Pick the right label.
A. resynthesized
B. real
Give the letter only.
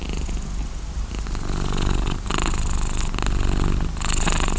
B